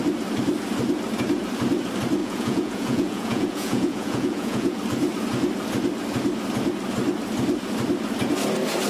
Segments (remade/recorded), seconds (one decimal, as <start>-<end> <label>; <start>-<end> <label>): 0.0-2.2 recorded; 2.2-4.8 remade; 4.8-8.9 recorded